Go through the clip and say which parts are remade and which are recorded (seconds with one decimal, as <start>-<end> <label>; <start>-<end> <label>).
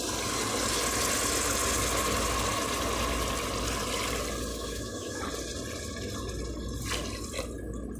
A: 0.0-4.5 recorded; 4.5-5.2 remade; 5.2-8.0 recorded